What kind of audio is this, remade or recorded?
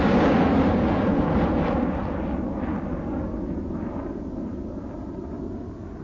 recorded